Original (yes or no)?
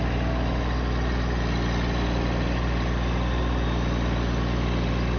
yes